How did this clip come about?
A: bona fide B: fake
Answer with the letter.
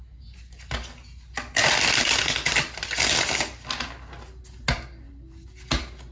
A